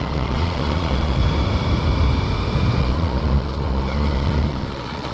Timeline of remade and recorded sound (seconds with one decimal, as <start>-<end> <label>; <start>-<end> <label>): 0.0-1.2 remade; 1.2-2.8 recorded; 2.8-5.1 remade